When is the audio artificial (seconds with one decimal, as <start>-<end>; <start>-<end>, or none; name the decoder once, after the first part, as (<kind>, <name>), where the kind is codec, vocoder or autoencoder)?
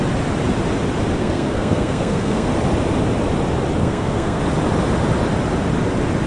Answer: 1.2-2.5 (codec, SNAC); 3.8-4.4